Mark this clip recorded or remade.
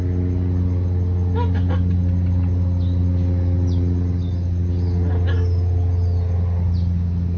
recorded